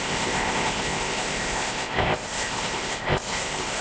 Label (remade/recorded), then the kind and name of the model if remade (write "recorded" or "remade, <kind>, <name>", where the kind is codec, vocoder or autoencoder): remade, codec, ZipCodec